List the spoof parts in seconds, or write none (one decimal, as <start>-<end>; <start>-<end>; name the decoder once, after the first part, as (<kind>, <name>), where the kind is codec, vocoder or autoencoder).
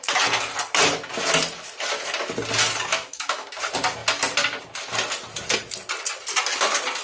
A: 2.9-3.5 (autoencoder, DAC-VAE)